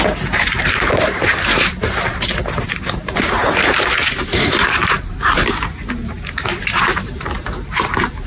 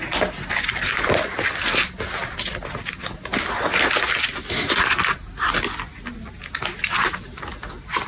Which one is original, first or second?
second